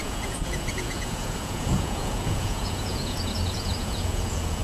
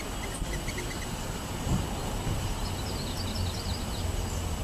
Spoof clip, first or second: first